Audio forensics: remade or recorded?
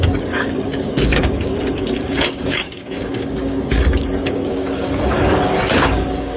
remade